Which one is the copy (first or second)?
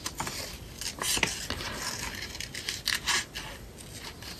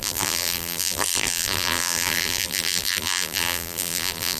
second